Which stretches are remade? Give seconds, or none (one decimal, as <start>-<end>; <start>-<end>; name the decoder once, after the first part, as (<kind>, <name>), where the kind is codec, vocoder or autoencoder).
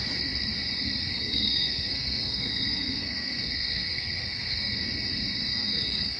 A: 1.0-4.7 (codec, SNAC); 5.5-6.2